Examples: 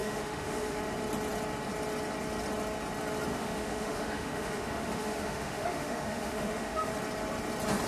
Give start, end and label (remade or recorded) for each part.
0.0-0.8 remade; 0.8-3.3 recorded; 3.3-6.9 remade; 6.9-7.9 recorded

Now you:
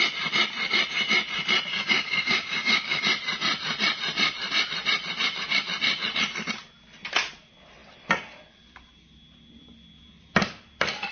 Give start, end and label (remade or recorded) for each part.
0.0-1.7 recorded; 1.7-3.0 remade; 3.0-11.1 recorded

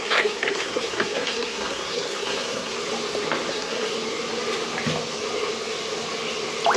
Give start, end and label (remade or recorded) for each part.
0.0-2.7 remade; 2.7-3.5 recorded; 3.5-3.9 remade; 3.9-6.8 recorded

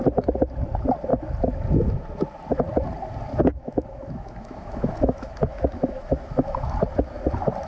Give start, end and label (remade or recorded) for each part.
0.0-3.3 recorded; 3.3-6.7 remade; 6.7-7.7 recorded

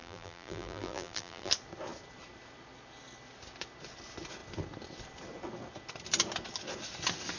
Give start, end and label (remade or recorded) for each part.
0.0-1.5 remade; 1.5-7.4 recorded

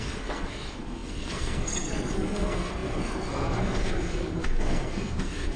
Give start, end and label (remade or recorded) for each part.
0.0-5.6 remade

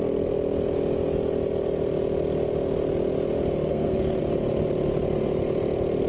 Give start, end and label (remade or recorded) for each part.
0.0-3.7 recorded; 3.7-4.2 remade; 4.2-6.1 recorded

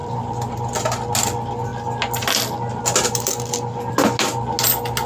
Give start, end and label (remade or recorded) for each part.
0.0-0.5 remade; 0.5-5.1 recorded